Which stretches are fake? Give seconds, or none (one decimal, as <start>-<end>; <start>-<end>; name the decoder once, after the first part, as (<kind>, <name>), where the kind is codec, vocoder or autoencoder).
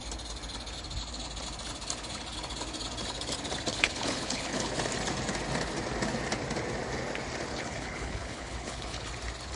3.7-4.7 (codec, HILCodec); 7.5-9.1